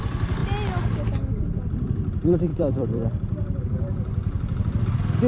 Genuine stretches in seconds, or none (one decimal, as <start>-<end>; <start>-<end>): 0.0-2.5; 3.6-5.3